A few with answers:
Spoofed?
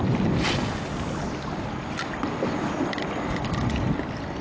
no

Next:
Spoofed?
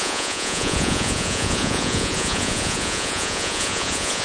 yes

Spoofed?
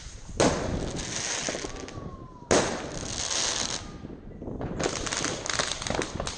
no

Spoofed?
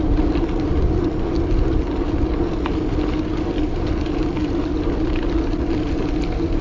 no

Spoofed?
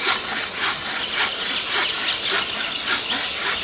no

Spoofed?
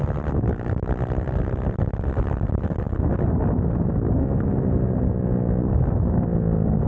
no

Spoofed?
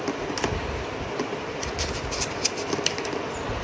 no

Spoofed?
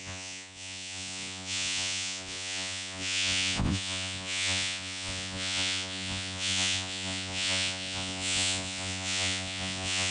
yes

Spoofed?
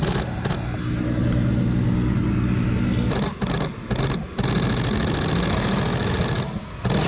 no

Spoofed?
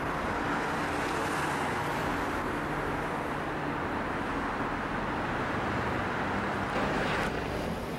no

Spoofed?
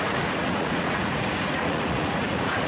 yes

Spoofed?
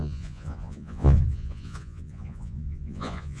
yes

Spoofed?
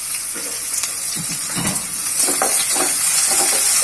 yes